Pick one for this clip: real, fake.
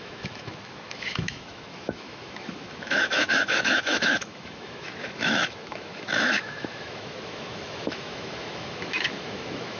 fake